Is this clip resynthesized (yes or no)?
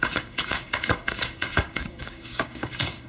yes